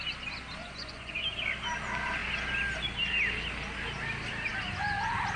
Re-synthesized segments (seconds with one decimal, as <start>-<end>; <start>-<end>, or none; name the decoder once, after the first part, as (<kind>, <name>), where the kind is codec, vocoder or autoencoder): 0.6-1.2 (vocoder, Vocos)